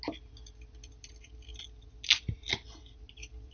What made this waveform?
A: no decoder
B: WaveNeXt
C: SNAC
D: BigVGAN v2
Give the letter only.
A